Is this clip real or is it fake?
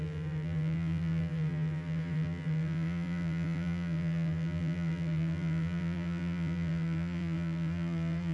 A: fake